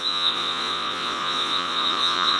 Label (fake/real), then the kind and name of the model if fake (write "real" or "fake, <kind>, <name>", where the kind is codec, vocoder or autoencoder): fake, vocoder, Vocos